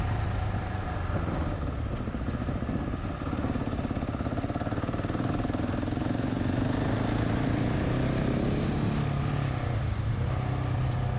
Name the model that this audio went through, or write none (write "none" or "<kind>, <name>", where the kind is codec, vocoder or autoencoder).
none